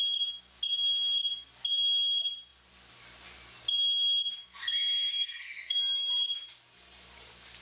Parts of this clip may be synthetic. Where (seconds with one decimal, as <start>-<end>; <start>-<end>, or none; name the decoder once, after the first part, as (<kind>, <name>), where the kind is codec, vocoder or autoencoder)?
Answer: 5.1-6.1 (codec, SNAC)